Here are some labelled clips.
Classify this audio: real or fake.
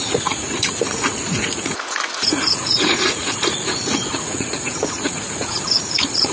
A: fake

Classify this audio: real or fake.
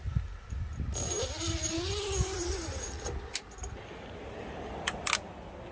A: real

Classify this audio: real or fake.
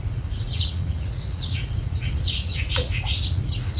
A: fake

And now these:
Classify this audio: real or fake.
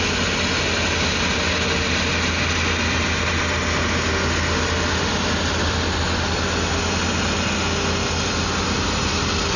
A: real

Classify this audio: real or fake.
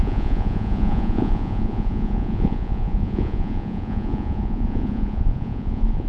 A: fake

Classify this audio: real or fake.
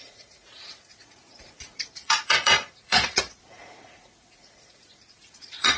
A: fake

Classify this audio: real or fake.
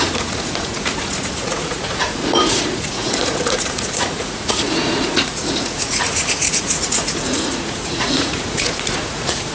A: fake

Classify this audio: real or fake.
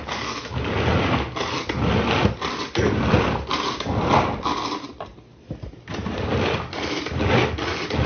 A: real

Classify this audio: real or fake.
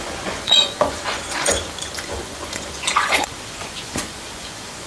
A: fake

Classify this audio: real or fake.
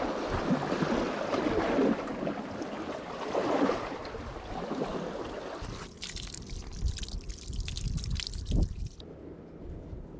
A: real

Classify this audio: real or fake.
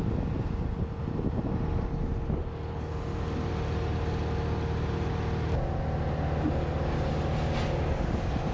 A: real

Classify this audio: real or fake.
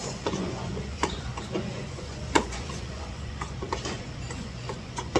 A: fake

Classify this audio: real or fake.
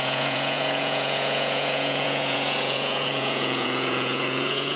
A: fake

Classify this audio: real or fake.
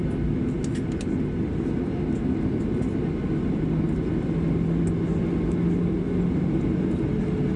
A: real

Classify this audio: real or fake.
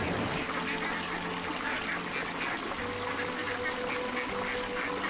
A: real